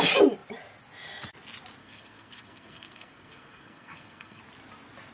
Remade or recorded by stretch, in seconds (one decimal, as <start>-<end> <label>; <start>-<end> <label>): 0.0-1.8 recorded; 1.8-4.4 remade; 4.4-5.1 recorded